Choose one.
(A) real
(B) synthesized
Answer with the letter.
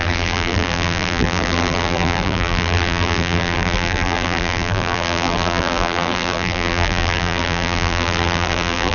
B